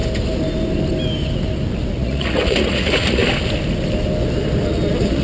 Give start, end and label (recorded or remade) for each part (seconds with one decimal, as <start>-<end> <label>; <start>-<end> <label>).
0.0-1.9 recorded; 1.9-3.2 remade; 3.2-5.2 recorded